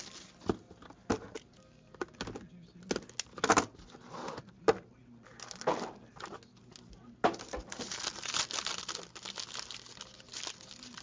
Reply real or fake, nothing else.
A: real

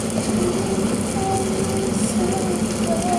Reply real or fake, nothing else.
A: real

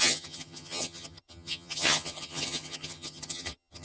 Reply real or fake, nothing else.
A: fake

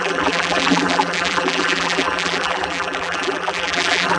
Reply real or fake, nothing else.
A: fake